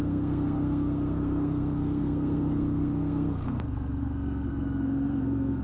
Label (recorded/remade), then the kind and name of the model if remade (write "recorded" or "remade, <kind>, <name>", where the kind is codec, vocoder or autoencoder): remade, codec, SNAC